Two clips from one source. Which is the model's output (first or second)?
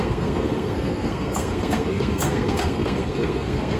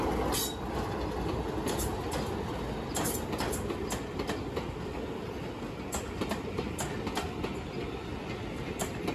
first